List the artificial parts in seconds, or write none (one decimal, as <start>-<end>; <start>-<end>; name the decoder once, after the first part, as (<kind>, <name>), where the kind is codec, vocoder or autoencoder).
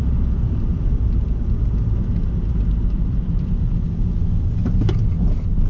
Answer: 0.7-4.1 (vocoder, BigVGAN v2)